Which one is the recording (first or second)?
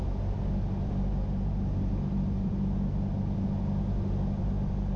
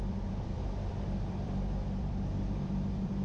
first